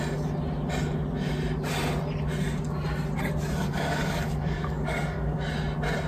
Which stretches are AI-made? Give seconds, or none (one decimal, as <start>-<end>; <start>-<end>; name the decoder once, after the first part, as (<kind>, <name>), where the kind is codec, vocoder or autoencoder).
3.7-5.5 (codec, DAC)